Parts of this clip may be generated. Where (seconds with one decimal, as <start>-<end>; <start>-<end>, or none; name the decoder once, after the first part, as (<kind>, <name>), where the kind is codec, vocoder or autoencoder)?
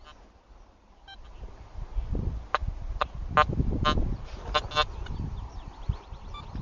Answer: none